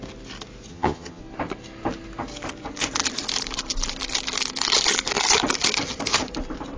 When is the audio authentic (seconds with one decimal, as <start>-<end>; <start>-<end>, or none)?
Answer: 0.0-0.7; 1.2-6.8